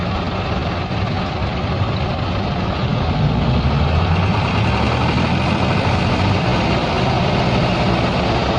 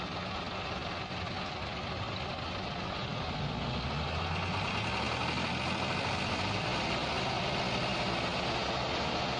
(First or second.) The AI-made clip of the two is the first